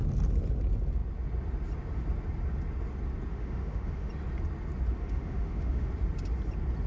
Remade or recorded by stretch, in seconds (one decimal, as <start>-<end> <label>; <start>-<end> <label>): 0.0-3.3 recorded; 3.3-4.1 remade; 4.1-5.0 recorded; 5.0-5.9 remade; 5.9-6.9 recorded